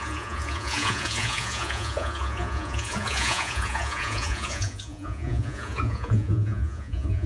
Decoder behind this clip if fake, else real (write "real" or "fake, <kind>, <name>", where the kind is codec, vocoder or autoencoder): fake, vocoder, Vocos